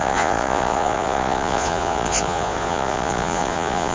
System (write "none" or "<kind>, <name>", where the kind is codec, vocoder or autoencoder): vocoder, Vocos